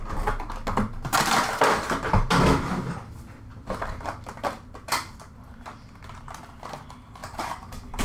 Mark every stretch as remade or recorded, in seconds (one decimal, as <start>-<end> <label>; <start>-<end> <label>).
0.0-8.0 recorded